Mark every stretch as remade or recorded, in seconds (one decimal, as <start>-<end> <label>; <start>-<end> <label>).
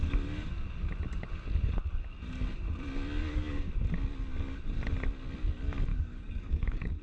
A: 0.0-3.2 recorded; 3.2-3.7 remade; 3.7-5.9 recorded; 5.9-7.0 remade